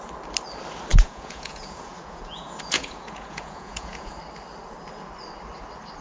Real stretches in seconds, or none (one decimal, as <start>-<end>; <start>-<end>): 0.0-0.9; 4.2-6.0